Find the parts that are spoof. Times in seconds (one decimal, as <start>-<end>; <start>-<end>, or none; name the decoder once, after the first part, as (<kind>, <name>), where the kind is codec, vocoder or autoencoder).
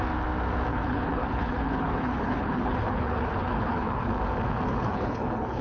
0.7-4.1 (codec, HILCodec); 4.7-5.6